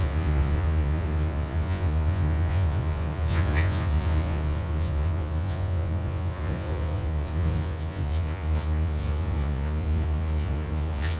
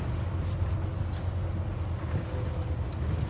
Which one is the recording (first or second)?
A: second